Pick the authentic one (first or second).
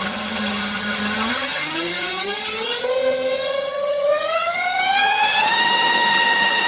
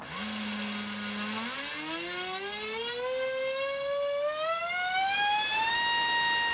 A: second